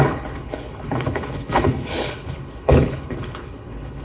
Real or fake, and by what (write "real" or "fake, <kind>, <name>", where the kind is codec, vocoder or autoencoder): fake, codec, HILCodec